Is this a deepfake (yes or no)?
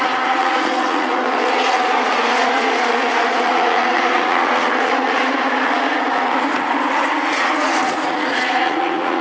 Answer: yes